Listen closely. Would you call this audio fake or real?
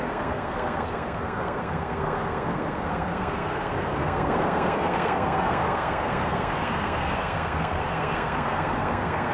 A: fake